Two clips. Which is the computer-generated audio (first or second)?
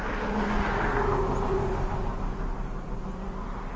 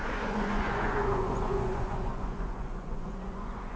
second